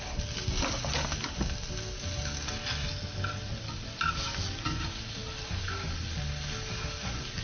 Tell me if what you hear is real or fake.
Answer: real